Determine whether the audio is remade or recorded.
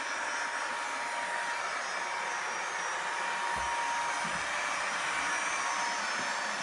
recorded